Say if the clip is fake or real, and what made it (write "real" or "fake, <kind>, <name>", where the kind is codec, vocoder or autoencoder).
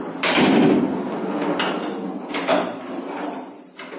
real